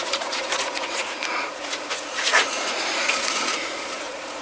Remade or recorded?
remade